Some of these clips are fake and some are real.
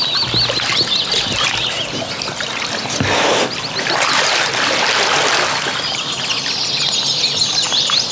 real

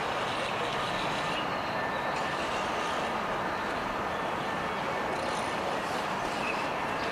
real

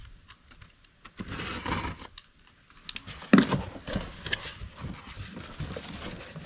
real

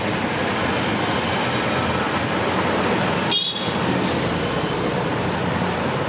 real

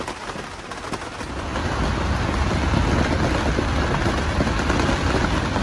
real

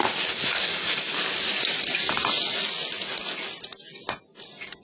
real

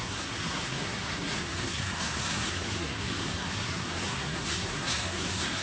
fake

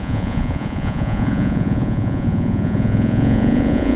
fake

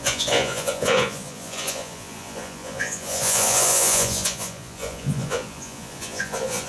fake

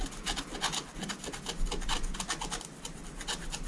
real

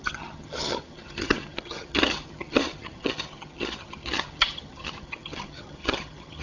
fake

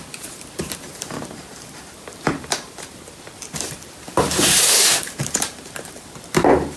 fake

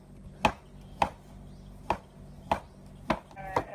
real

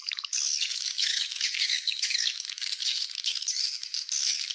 fake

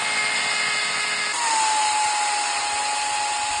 real